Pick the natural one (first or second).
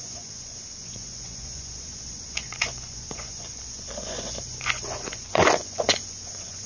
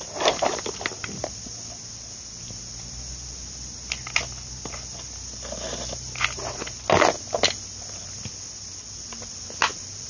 second